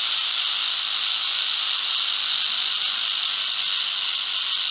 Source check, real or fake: real